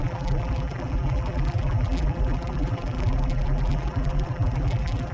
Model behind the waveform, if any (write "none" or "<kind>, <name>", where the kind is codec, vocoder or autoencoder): vocoder, BigVGAN v2